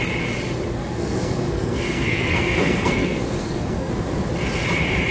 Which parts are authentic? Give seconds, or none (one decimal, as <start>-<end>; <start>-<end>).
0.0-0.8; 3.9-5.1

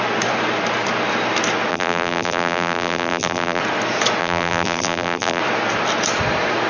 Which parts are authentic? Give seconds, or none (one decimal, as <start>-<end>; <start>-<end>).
0.0-1.7; 3.6-4.2; 5.4-6.7

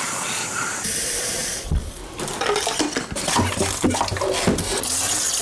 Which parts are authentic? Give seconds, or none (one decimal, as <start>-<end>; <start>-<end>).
0.4-1.2; 2.0-5.4